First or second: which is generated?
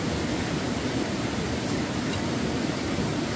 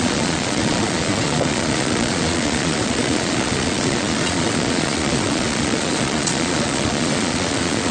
second